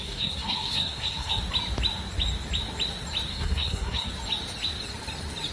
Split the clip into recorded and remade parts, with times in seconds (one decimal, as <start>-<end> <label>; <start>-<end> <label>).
0.0-1.4 remade; 1.4-3.3 recorded; 3.3-4.1 remade; 4.1-5.5 recorded